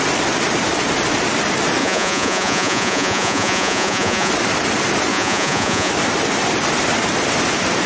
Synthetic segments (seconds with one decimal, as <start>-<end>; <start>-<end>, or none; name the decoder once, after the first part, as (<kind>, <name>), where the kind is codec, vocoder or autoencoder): 1.8-4.3 (vocoder, Vocos); 5.1-5.9